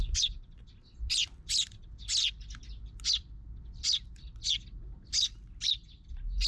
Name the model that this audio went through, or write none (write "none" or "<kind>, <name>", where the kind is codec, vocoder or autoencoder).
none